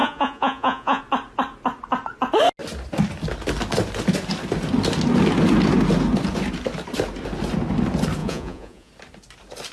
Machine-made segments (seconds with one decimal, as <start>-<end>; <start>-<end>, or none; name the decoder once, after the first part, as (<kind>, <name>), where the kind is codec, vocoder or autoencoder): 0.0-1.0 (vocoder, Vocos); 8.2-8.9

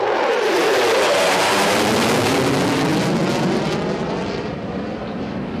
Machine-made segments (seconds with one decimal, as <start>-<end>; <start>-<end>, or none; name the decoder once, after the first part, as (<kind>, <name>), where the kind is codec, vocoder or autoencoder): none

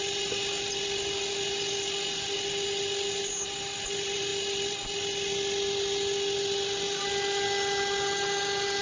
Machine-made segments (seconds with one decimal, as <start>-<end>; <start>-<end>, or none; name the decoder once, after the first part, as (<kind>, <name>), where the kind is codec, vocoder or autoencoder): none